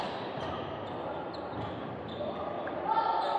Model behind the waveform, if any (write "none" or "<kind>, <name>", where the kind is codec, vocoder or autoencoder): none